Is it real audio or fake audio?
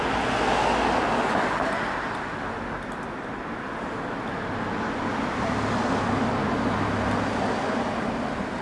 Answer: real